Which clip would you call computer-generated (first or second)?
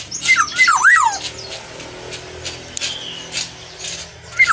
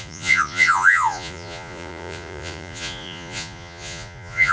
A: second